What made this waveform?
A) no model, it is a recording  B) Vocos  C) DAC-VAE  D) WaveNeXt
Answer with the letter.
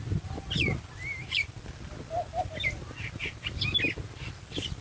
A